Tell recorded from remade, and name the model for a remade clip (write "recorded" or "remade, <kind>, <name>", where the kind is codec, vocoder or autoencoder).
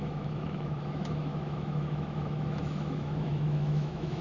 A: remade, autoencoder, DAC-VAE